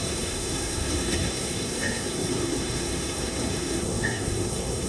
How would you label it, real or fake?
fake